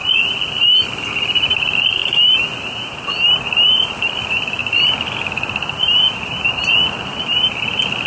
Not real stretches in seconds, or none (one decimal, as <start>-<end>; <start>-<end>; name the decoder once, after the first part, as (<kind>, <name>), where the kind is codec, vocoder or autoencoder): none